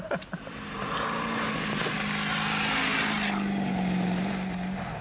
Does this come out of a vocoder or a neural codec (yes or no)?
no